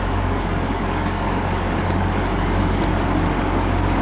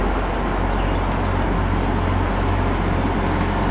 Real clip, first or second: second